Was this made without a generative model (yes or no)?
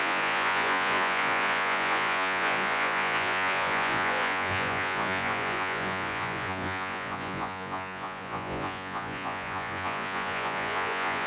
no